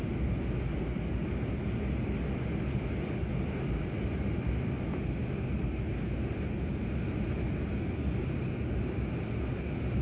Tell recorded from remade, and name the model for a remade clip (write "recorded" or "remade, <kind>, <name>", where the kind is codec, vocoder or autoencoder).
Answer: recorded